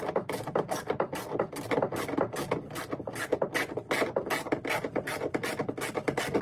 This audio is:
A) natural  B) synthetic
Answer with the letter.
A